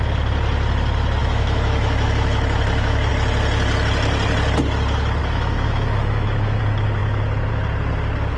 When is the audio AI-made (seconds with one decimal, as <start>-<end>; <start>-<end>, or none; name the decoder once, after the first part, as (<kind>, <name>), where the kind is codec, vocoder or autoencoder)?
1.2-3.1 (autoencoder, DAC-VAE); 5.2-6.6